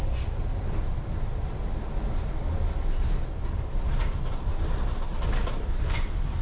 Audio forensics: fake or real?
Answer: real